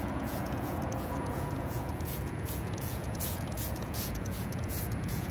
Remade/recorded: remade